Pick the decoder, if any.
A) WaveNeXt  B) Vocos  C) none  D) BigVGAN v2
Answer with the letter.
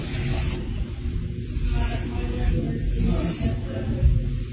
C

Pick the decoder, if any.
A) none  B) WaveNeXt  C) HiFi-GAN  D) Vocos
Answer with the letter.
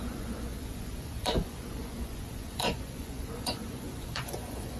D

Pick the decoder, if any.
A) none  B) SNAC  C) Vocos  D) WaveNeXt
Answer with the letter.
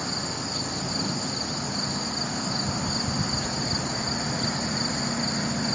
A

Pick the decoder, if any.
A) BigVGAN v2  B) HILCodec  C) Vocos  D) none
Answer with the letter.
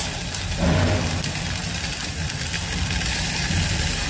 D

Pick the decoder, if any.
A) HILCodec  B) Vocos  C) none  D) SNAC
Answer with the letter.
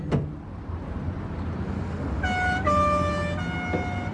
C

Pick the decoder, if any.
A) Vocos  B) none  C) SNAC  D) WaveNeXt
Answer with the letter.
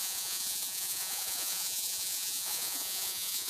A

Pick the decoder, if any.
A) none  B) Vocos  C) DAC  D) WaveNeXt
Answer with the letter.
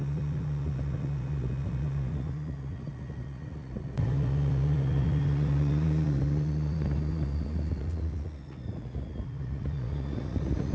B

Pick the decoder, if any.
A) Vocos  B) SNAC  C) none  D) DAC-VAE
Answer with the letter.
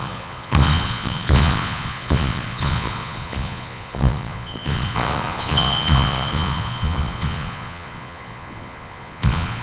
A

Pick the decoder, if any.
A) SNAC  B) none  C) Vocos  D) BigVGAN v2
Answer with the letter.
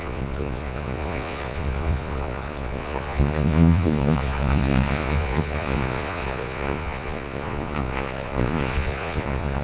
C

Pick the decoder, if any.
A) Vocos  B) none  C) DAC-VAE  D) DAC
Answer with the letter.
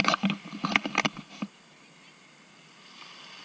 B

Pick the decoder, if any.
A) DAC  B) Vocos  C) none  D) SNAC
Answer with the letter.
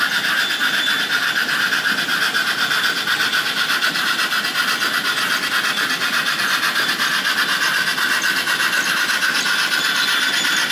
C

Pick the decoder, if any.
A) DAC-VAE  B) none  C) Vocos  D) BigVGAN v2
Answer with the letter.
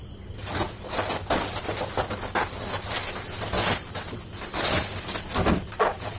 B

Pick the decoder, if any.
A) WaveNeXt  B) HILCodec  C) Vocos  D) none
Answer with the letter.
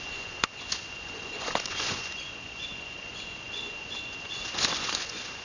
C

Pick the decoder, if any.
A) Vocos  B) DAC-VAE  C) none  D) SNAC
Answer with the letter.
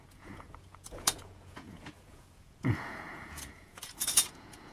A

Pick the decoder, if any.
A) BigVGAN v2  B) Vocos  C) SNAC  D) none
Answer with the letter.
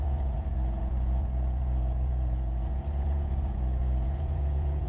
B